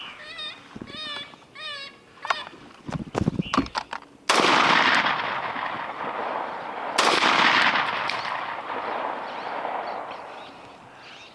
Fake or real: real